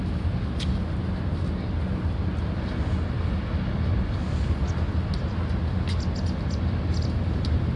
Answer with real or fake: real